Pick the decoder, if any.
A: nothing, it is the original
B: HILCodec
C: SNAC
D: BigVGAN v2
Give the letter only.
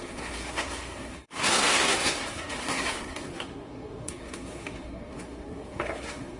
C